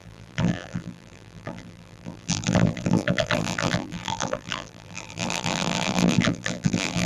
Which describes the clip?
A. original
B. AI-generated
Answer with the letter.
B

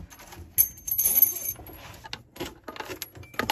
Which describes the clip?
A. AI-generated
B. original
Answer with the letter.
B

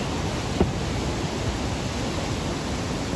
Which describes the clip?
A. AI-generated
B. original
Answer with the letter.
B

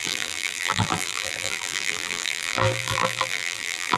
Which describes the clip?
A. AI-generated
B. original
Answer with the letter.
A